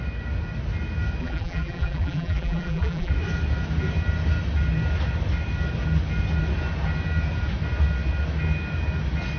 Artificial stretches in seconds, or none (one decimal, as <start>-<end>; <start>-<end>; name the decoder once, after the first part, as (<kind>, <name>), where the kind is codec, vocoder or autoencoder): 1.2-3.1 (vocoder, BigVGAN v2)